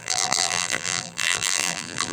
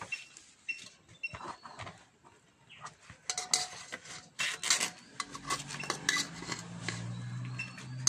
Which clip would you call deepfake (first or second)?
first